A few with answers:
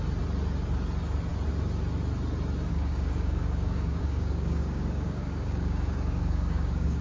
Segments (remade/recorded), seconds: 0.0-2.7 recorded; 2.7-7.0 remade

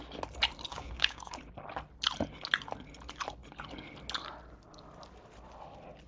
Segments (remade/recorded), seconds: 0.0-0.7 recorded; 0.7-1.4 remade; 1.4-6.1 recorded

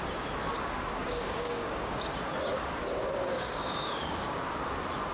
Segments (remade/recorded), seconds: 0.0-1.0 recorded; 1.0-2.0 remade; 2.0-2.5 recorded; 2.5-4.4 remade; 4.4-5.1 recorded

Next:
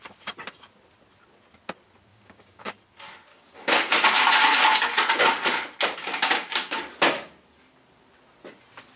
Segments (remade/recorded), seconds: 0.0-2.1 recorded; 2.1-2.8 remade; 2.8-3.3 recorded; 3.3-4.3 remade; 4.3-6.0 recorded; 6.0-6.8 remade; 6.8-9.0 recorded

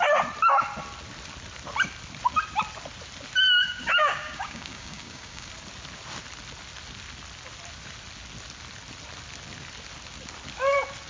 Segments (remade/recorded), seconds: 0.0-3.6 recorded; 3.6-5.5 remade; 5.5-11.1 recorded